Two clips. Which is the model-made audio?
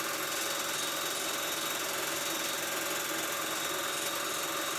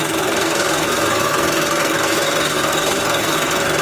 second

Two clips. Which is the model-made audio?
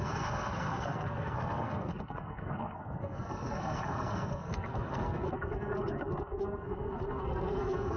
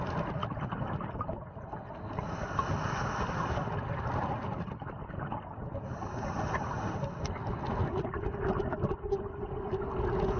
first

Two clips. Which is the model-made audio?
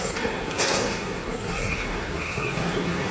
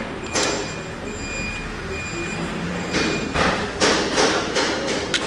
first